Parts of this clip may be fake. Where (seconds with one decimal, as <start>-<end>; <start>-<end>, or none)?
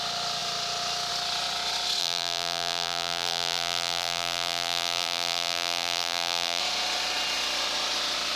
2.0-6.6